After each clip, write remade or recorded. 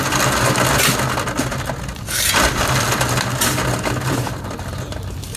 recorded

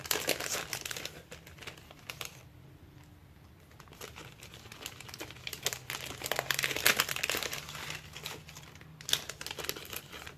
recorded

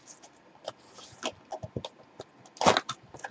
recorded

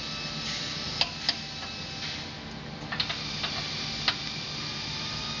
recorded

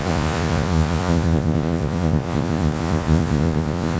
remade